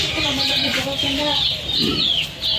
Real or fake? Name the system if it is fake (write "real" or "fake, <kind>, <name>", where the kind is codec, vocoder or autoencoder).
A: real